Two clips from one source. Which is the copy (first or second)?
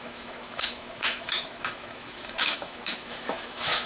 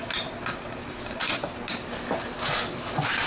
first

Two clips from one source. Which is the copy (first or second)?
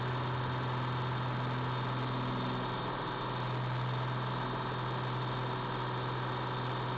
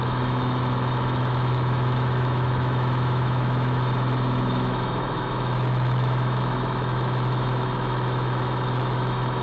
second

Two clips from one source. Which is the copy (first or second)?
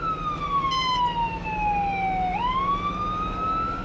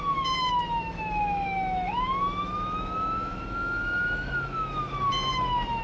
second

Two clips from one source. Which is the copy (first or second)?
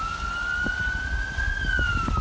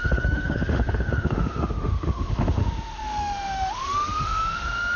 second